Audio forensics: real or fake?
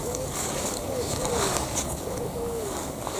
fake